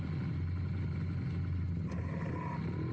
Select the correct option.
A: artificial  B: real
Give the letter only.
B